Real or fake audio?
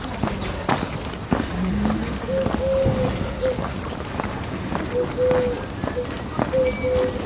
real